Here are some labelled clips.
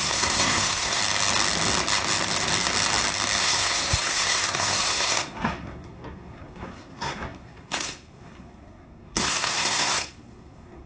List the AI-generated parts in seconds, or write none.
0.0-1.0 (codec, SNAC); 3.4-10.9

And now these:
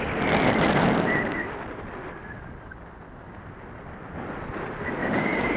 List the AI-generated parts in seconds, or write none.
5.0-5.6 (codec, DAC)

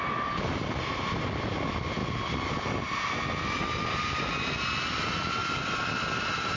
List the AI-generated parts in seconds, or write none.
5.4-6.6 (vocoder, BigVGAN v2)

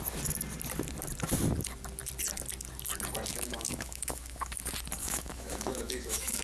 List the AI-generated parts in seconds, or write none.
3.3-4.6 (autoencoder, DAC-VAE); 5.0-6.4

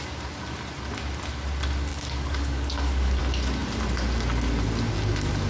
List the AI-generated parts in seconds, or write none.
1.9-3.2 (codec, DAC)